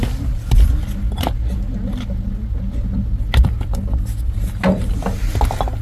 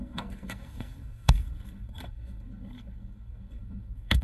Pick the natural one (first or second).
first